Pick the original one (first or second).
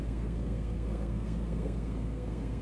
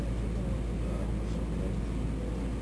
second